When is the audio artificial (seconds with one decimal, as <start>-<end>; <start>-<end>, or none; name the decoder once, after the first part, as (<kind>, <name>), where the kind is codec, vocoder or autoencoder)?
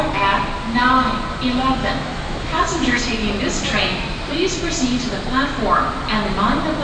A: 1.8-3.0 (autoencoder, DAC-VAE)